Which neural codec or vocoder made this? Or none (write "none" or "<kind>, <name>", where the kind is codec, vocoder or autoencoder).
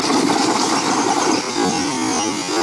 none